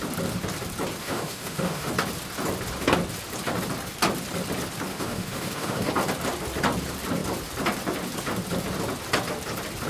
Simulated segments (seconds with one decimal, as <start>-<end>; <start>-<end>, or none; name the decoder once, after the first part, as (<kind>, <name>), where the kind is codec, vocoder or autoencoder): 1.0-1.9 (autoencoder, DAC-VAE); 4.9-5.9